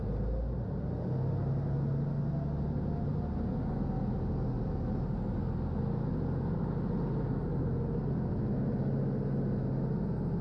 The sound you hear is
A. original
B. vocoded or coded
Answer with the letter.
A